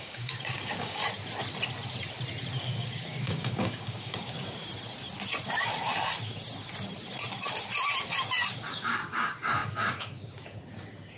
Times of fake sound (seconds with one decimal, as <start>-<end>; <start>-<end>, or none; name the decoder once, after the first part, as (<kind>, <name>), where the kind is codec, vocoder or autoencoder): 0.0-1.0 (codec, DAC); 2.6-4.6; 8.7-11.2